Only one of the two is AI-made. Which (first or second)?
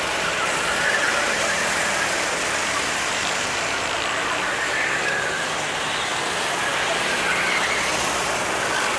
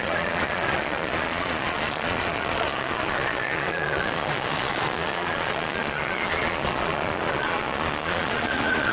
second